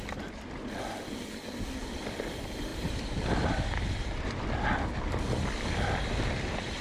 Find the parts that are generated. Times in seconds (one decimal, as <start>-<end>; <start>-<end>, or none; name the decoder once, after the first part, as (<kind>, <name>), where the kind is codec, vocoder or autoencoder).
none